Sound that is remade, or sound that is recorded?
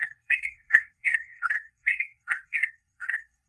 remade